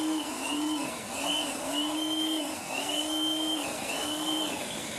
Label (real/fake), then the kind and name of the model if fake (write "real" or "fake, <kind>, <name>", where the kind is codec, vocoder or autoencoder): fake, codec, SNAC